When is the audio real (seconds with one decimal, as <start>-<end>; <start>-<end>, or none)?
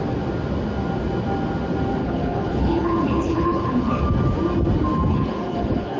0.0-2.0; 4.0-5.1